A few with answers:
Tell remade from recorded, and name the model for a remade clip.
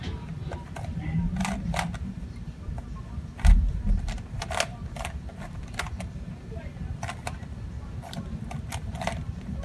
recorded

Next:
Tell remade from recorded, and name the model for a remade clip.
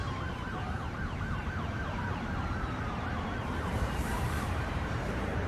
remade, vocoder, BigVGAN v2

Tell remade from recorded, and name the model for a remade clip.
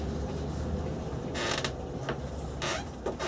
recorded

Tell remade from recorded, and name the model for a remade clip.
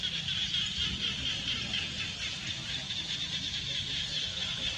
recorded